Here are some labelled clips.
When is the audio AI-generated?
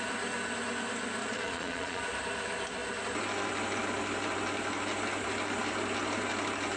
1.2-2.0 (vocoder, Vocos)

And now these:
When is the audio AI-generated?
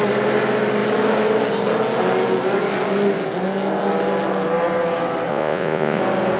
5.3-6.0 (vocoder, Vocos)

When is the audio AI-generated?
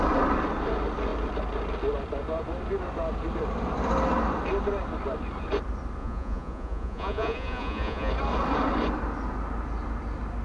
6.0-8.1 (vocoder, Vocos)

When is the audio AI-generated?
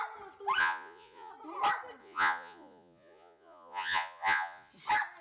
0.6-1.3 (vocoder, Vocos); 2.0-4.7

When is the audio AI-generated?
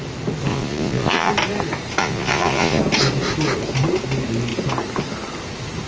0.5-1.3 (vocoder, Vocos); 2.0-2.8